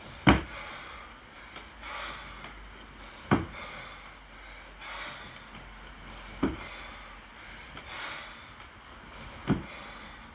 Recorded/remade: recorded